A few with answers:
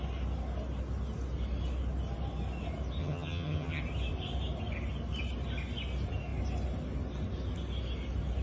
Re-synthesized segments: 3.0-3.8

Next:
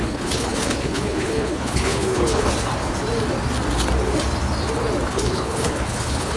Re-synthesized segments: 0.0-2.5; 5.1-6.4

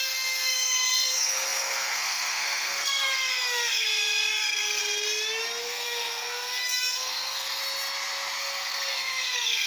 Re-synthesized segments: 0.0-4.8; 5.6-7.6; 8.4-9.7

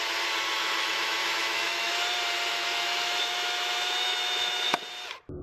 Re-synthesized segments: 0.6-1.9; 2.5-4.8

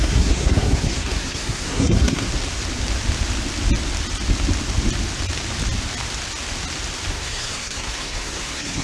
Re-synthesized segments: 0.0-2.3; 7.1-8.8

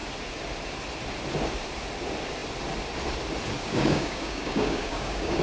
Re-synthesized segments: 3.6-5.4

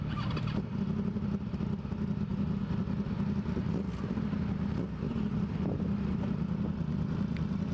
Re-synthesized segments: none